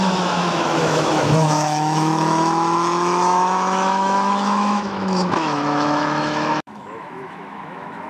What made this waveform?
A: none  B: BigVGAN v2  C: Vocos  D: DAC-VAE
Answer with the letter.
D